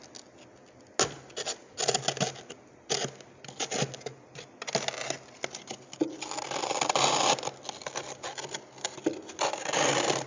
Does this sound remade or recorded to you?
recorded